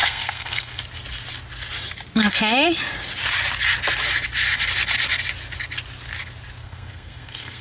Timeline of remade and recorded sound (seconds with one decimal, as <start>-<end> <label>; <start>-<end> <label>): 0.0-0.8 remade; 0.8-6.6 recorded; 6.6-7.6 remade